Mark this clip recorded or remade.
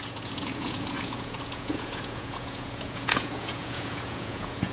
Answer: remade